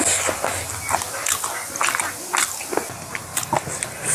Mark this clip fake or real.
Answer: real